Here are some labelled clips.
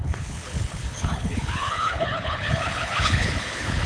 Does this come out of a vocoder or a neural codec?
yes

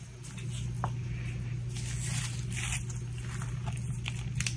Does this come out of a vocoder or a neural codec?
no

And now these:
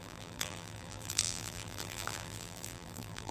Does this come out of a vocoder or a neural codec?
yes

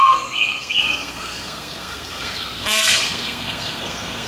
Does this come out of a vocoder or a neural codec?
yes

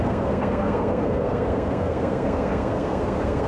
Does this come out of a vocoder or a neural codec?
yes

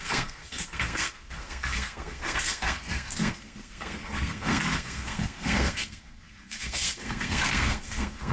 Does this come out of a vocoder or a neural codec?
yes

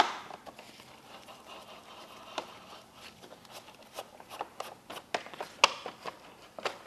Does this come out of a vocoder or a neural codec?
no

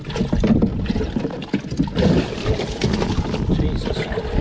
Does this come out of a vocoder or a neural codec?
no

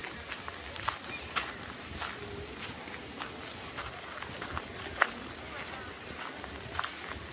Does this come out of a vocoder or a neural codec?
no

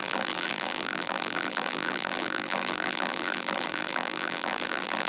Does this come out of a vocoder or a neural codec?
yes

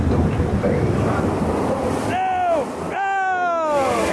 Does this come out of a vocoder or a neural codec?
no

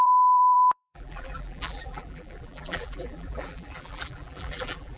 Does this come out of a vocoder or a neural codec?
yes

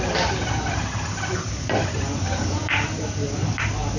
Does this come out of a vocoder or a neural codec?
no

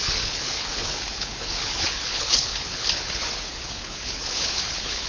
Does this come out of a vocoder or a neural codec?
yes